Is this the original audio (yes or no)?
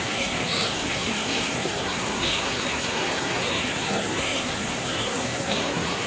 no